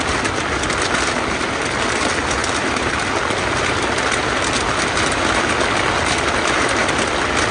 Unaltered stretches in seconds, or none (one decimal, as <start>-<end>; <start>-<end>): 0.0-2.4; 2.9-7.5